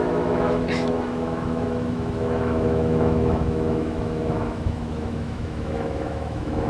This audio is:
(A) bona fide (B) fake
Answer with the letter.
B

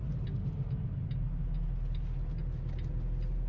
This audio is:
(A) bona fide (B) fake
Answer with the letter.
A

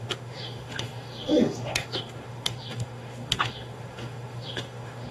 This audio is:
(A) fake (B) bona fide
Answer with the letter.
A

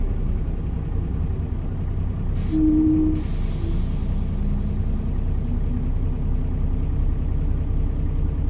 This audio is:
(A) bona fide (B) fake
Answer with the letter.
A